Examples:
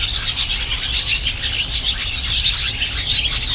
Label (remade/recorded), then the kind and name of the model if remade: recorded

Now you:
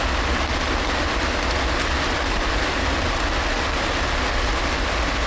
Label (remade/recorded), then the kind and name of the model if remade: recorded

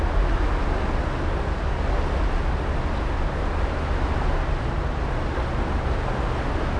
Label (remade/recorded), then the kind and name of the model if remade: recorded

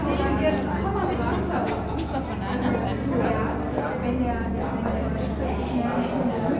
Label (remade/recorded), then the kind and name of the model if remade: recorded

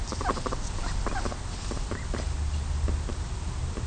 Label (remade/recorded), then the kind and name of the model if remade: recorded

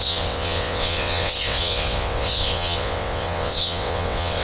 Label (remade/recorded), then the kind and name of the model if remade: remade, vocoder, WaveNeXt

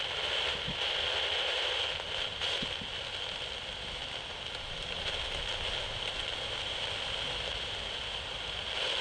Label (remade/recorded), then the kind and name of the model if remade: recorded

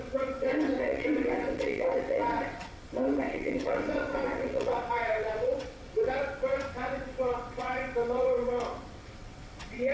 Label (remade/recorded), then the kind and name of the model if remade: remade, vocoder, WaveNeXt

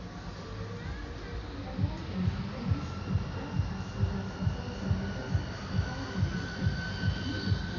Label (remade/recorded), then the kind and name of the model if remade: recorded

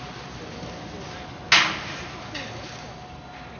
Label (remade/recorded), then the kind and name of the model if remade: recorded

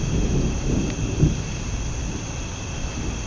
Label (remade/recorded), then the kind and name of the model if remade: recorded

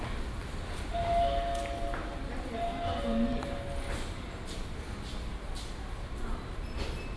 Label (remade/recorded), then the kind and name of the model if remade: recorded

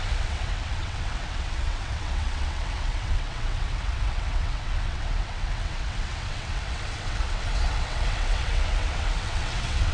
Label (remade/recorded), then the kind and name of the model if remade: remade, vocoder, WaveNeXt